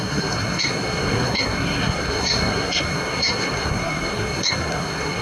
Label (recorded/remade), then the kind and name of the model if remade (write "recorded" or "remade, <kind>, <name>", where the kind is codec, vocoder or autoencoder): remade, codec, SNAC